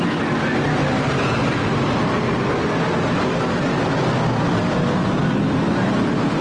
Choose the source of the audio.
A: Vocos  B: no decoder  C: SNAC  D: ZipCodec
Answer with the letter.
B